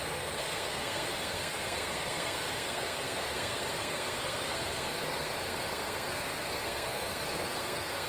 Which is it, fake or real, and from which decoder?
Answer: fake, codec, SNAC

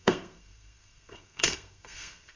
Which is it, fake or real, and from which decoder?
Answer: fake, codec, SNAC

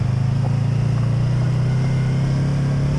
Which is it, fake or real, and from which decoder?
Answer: real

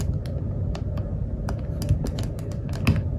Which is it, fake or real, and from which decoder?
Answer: real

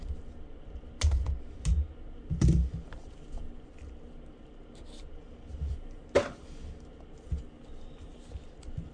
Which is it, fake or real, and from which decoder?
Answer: real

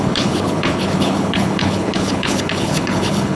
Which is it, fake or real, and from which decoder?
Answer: fake, codec, HILCodec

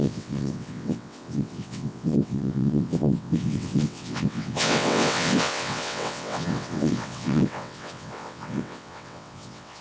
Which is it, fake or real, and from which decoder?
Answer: fake, vocoder, WaveNeXt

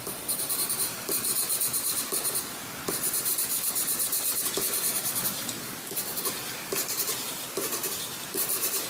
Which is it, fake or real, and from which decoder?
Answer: fake, vocoder, BigVGAN v2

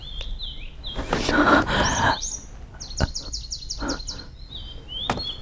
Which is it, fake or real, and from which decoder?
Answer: real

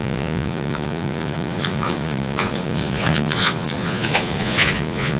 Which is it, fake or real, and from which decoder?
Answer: fake, vocoder, Vocos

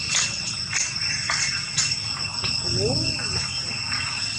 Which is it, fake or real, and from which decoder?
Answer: real